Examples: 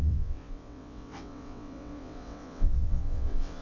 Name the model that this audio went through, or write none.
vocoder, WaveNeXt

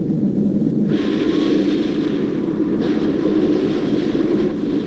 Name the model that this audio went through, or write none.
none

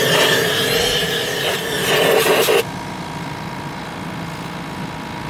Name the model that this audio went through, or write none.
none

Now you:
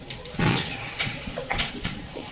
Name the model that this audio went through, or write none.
vocoder, Vocos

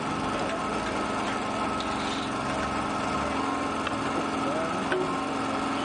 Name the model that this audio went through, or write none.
none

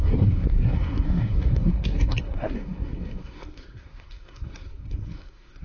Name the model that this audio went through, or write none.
codec, SNAC